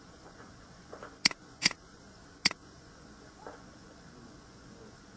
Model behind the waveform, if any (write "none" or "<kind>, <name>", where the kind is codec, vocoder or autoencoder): vocoder, Vocos